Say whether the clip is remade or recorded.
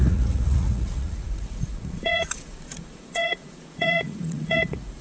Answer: remade